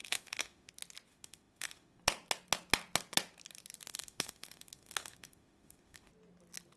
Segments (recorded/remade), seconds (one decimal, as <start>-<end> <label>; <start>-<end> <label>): 0.0-0.7 remade; 0.7-1.1 recorded; 1.1-2.0 remade; 2.0-3.9 recorded; 3.9-6.1 remade; 6.1-6.8 recorded